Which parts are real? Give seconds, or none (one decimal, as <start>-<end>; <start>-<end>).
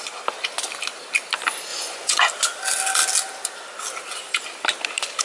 0.0-1.7; 2.2-5.2